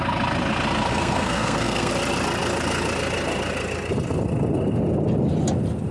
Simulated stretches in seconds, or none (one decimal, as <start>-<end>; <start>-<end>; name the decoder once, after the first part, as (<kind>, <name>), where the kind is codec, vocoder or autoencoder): 0.9-1.9 (codec, SNAC)